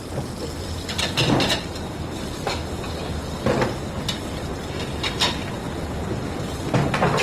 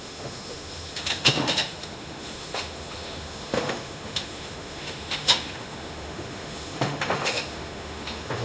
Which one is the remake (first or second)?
second